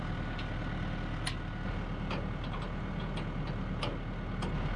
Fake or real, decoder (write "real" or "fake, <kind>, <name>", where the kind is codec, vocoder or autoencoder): real